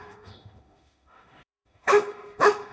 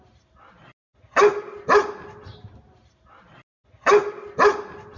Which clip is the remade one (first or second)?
first